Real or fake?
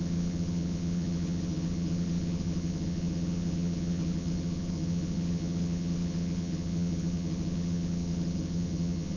fake